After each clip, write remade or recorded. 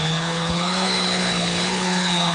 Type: remade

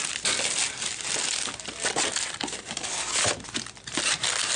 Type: recorded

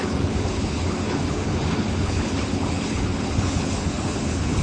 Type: remade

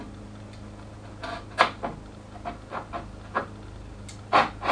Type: recorded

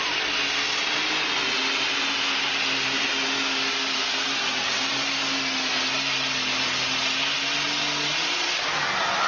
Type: recorded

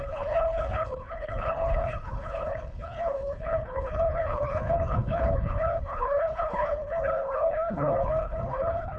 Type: remade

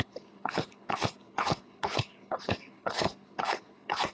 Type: remade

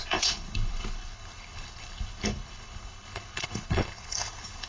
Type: remade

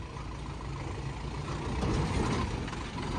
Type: recorded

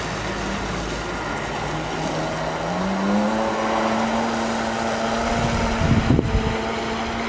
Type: recorded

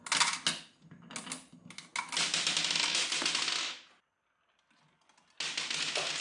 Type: recorded